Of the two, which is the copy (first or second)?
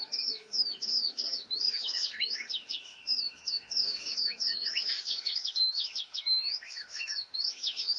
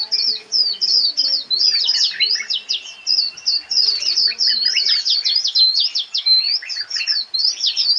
first